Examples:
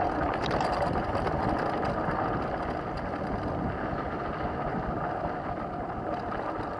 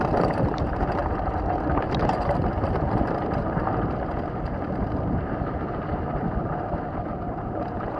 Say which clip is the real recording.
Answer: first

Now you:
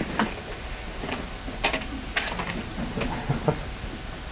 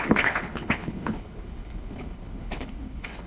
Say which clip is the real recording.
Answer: first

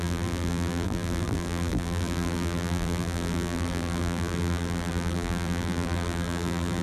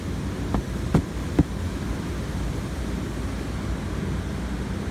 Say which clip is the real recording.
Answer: second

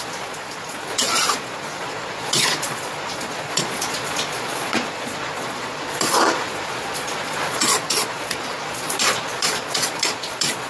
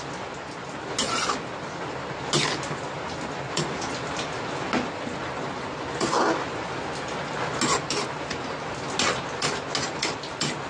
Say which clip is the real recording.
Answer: second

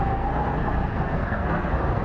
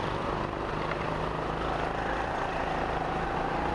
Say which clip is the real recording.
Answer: second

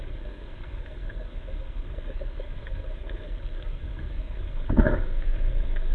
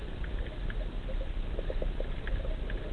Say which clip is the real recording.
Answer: second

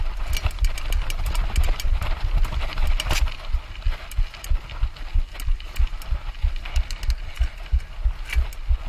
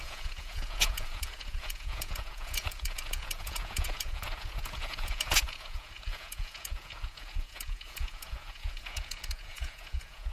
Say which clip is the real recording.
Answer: first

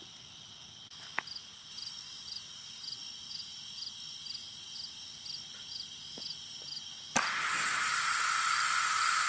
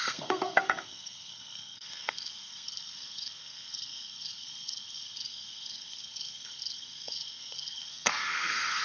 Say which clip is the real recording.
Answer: first